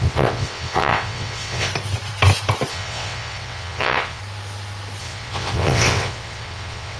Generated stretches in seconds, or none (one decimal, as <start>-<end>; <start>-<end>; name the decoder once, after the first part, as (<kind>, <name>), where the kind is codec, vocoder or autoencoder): 0.0-1.7 (vocoder, WaveNeXt); 2.7-4.2; 5.0-7.0